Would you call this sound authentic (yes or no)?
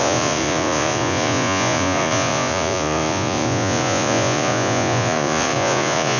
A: no